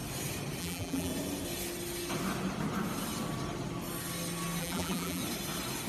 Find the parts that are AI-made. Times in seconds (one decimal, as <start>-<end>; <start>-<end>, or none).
0.6-1.1; 4.6-5.2